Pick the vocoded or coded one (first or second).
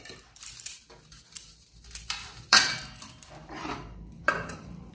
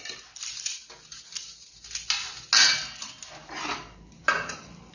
first